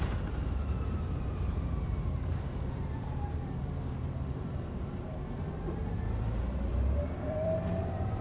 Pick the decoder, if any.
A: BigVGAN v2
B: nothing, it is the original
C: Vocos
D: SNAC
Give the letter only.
A